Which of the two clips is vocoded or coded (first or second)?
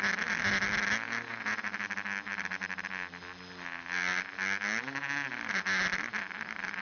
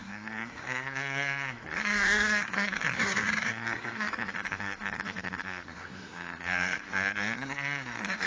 second